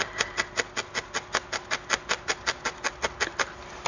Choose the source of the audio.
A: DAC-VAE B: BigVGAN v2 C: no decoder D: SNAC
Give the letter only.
C